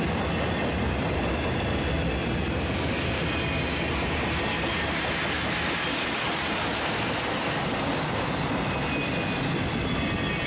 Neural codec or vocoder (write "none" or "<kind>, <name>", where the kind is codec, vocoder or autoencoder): none